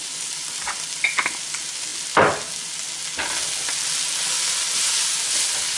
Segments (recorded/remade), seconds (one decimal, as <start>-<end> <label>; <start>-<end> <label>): 0.0-5.8 recorded